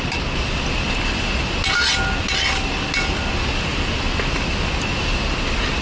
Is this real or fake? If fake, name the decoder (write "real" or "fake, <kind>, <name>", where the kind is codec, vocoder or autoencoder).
real